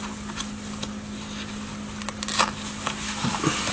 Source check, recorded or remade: recorded